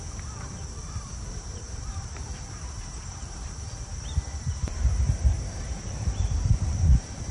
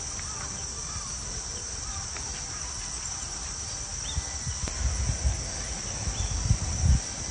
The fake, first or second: first